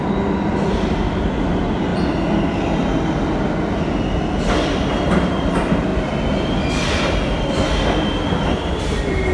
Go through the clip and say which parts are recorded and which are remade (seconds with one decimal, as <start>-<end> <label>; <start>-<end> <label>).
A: 0.0-9.3 recorded